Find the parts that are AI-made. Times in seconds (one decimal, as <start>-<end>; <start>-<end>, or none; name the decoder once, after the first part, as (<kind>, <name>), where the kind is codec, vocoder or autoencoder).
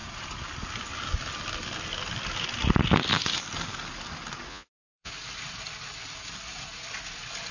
4.5-5.1 (vocoder, Vocos)